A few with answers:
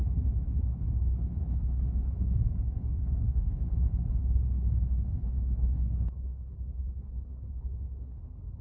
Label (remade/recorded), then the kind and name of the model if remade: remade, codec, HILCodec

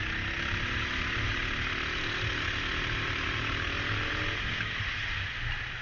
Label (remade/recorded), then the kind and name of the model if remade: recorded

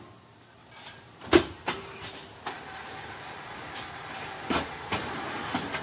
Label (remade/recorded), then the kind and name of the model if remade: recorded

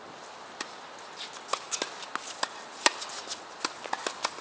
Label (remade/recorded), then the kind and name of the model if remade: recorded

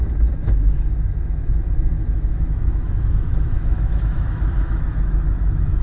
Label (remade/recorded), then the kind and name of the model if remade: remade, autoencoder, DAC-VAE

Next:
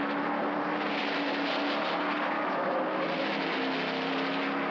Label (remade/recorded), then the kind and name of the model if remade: recorded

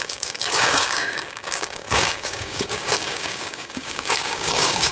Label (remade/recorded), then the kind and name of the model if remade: remade, codec, DAC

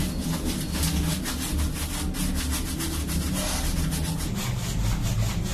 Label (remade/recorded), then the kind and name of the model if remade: recorded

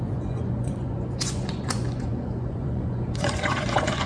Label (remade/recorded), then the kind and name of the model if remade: remade, vocoder, Vocos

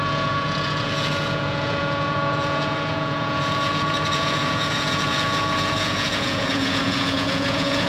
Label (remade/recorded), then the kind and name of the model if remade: remade, vocoder, Vocos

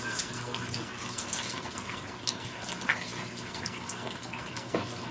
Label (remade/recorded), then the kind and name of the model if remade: remade, codec, SNAC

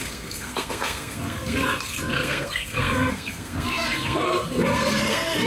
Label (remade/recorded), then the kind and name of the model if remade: remade, codec, SNAC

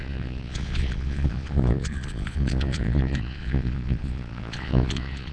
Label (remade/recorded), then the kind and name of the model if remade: remade, vocoder, Vocos